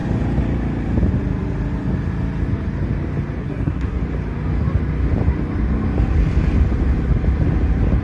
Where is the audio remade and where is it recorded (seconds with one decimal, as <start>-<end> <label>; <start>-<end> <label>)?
0.0-3.4 recorded; 3.4-4.0 remade; 4.0-8.0 recorded